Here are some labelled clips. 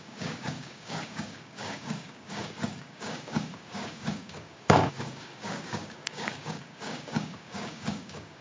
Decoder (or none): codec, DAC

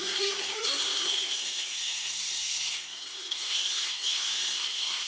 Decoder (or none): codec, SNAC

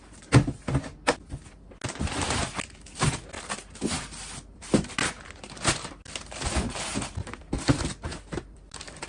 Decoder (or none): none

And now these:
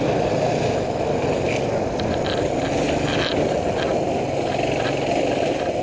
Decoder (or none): none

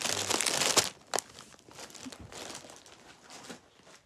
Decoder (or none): none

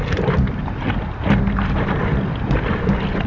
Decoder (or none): none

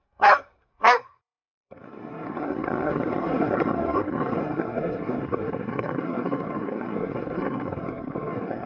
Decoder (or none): codec, SNAC